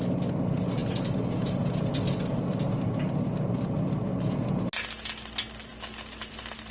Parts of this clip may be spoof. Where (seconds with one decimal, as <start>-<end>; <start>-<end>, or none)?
none